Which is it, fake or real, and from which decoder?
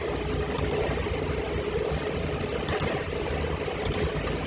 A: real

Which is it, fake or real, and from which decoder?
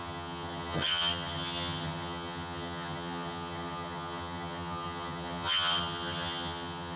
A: fake, vocoder, HiFi-GAN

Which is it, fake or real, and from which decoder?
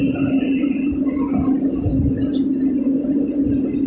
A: real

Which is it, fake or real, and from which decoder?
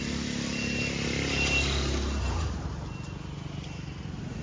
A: real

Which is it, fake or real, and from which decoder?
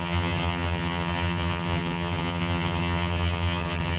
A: fake, vocoder, HiFi-GAN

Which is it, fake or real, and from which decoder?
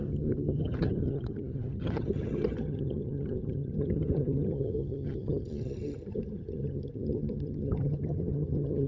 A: fake, vocoder, HiFi-GAN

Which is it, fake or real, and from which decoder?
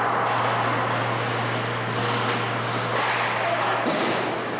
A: real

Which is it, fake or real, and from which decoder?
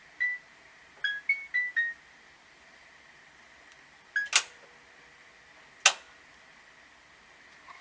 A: real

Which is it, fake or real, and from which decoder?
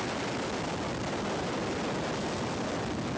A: real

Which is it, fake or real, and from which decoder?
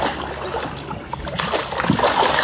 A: real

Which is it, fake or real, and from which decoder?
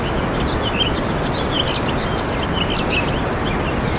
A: real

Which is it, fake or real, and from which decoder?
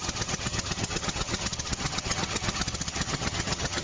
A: fake, vocoder, HiFi-GAN